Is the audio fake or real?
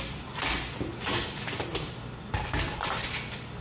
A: real